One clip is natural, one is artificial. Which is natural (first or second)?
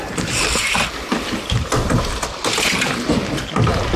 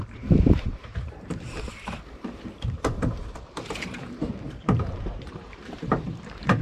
first